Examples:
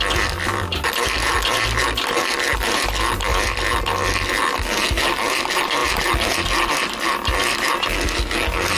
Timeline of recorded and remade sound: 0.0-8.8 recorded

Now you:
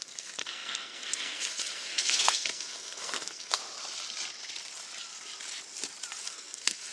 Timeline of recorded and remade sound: 0.0-3.6 remade; 3.6-6.2 recorded; 6.2-6.9 remade

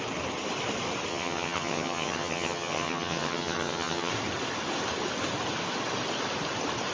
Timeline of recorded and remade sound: 0.0-1.1 recorded; 1.1-4.1 remade; 4.1-6.9 recorded